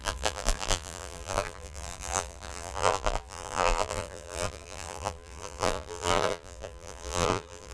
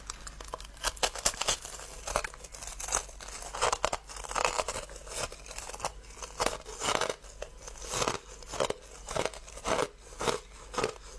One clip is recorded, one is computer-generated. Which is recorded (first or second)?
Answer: second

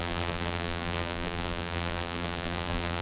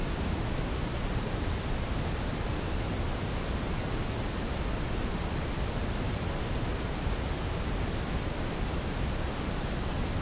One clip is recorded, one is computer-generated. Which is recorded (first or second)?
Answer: second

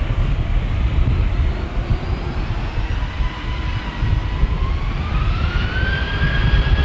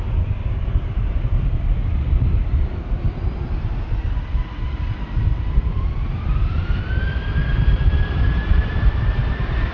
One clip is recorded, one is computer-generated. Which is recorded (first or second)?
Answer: first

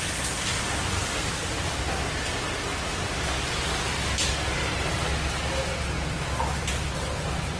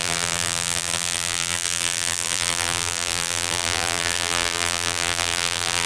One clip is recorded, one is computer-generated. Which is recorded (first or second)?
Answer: first